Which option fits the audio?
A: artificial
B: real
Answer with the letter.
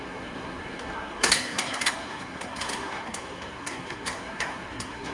A